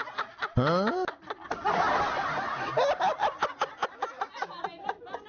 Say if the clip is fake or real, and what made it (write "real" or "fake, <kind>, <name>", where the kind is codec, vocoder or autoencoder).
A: real